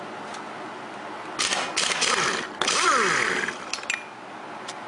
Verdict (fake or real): real